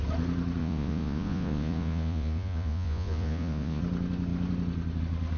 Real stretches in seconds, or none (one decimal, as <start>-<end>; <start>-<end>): 0.0-0.6; 3.8-5.4